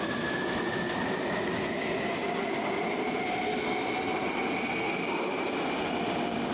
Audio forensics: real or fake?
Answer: real